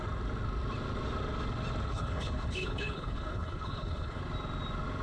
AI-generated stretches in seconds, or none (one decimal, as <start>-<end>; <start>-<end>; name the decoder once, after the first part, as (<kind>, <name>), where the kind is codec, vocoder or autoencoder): 1.9-4.2 (codec, HILCodec)